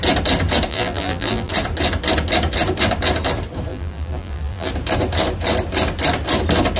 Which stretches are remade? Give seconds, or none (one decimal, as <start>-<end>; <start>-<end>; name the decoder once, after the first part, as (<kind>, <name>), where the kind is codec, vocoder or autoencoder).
0.7-1.5 (vocoder, BigVGAN v2); 3.7-4.7